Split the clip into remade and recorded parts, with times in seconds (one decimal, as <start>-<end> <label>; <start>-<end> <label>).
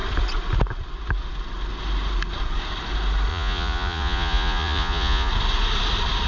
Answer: 0.0-3.3 recorded; 3.3-5.3 remade; 5.3-6.3 recorded